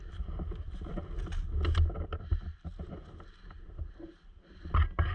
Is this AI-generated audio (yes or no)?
no